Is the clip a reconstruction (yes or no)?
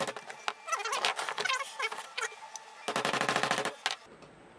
no